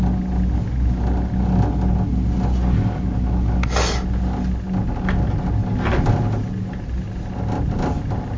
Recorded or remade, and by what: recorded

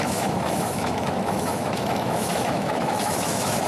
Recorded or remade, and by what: remade, autoencoder, DAC-VAE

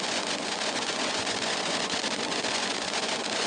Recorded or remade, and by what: remade, vocoder, Vocos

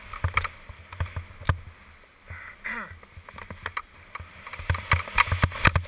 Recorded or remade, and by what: recorded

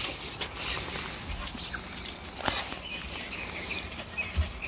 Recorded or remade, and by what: recorded